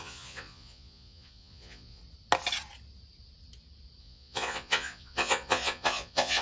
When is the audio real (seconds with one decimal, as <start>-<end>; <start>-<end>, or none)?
2.0-4.0